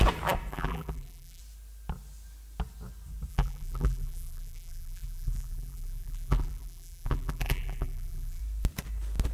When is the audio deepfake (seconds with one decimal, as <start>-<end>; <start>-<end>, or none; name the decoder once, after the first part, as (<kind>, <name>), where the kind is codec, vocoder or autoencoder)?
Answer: 0.5-1.4 (vocoder, BigVGAN v2); 3.3-8.4